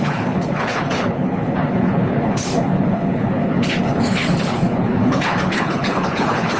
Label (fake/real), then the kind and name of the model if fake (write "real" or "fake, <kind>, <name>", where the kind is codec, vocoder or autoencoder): fake, codec, HILCodec